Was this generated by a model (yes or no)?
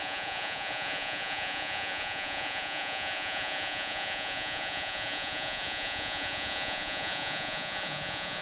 yes